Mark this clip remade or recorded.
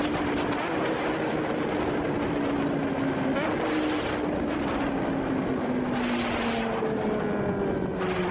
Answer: recorded